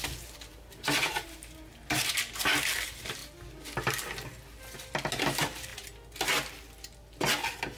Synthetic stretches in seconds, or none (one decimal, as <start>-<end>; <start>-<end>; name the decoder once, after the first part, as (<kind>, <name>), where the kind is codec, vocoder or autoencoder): 0.0-3.2 (vocoder, BigVGAN v2); 5.1-5.7